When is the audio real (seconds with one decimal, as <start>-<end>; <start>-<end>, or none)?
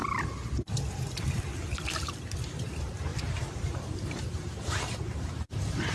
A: 0.0-2.2